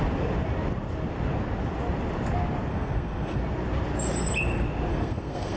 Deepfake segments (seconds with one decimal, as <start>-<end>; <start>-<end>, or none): 2.7-3.4; 4.9-5.6